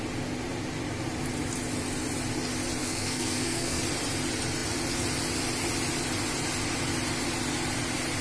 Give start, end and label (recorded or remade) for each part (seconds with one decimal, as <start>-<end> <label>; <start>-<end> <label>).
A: 0.0-2.8 recorded; 2.8-3.8 remade; 3.8-8.2 recorded